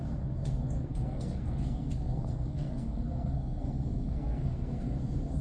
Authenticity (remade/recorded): remade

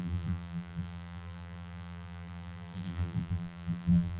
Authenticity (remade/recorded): remade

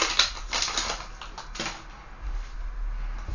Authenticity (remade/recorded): recorded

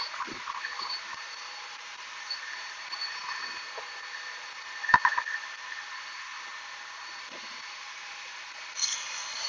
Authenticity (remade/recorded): remade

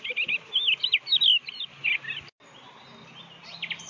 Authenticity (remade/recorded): recorded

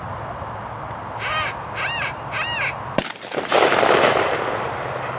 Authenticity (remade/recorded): recorded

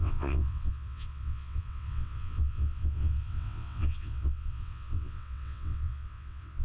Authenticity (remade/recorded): remade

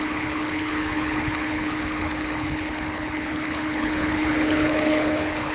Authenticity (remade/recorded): remade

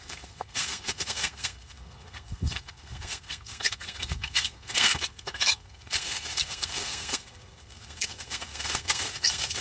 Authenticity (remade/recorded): remade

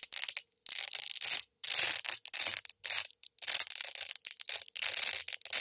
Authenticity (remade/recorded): recorded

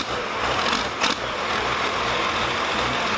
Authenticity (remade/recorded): recorded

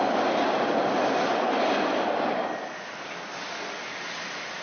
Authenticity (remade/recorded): recorded